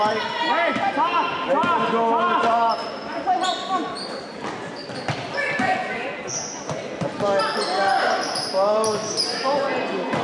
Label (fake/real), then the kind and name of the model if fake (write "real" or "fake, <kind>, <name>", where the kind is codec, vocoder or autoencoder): real